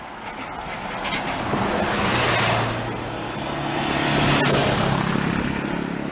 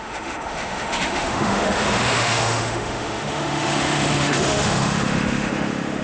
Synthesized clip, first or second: second